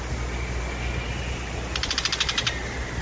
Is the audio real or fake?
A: real